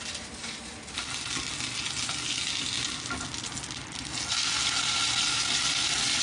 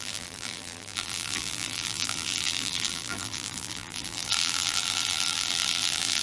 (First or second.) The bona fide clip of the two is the first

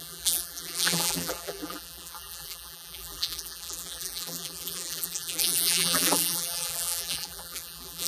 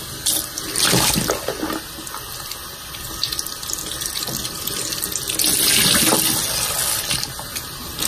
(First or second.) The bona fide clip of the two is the second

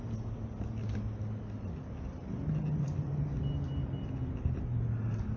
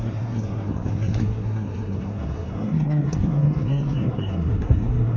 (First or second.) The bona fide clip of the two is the first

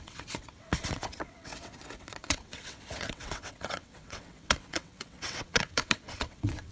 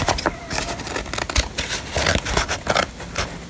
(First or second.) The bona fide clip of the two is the second